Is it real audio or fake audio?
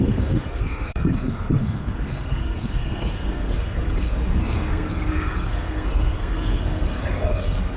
fake